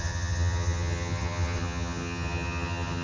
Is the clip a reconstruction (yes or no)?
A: yes